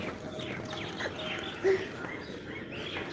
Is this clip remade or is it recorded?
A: recorded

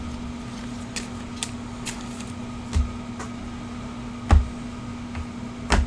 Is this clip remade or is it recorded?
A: recorded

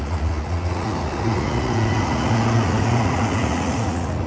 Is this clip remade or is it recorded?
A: remade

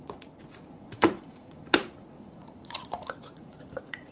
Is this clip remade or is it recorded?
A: remade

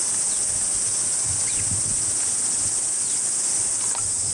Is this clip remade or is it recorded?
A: recorded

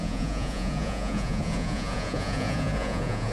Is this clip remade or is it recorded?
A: remade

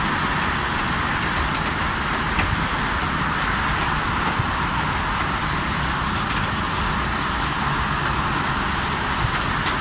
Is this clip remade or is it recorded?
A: recorded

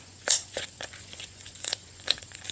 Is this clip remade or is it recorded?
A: remade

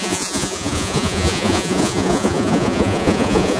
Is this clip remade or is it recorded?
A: remade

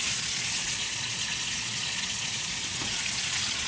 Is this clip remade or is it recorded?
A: remade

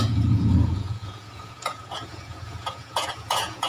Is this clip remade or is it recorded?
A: remade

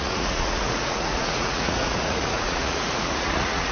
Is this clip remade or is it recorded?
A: remade